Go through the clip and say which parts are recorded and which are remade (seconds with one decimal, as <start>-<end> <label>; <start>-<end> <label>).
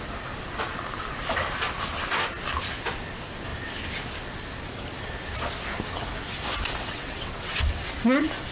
0.0-6.7 recorded; 6.7-7.9 remade; 7.9-8.5 recorded